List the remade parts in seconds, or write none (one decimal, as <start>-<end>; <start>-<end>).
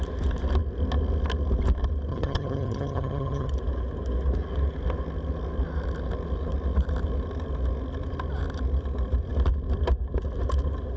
2.1-3.5